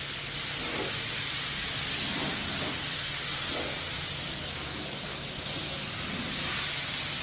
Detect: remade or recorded recorded